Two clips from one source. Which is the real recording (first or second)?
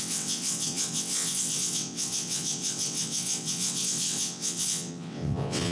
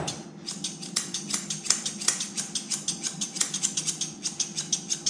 second